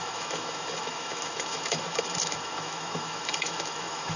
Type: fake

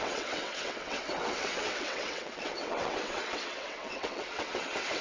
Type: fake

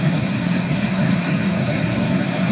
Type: fake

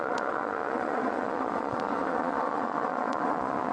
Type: fake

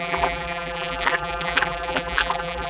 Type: fake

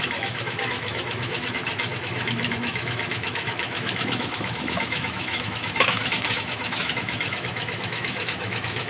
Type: fake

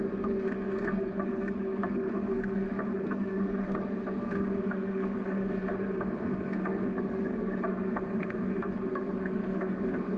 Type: fake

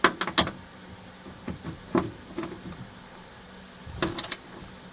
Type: real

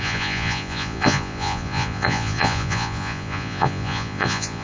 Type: fake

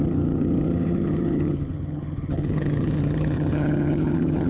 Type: fake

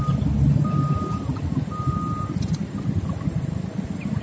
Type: real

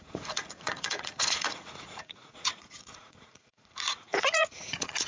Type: fake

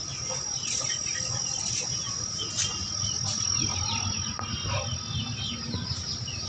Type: real